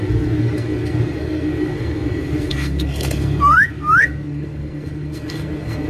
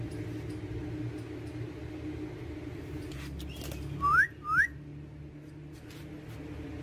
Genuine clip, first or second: second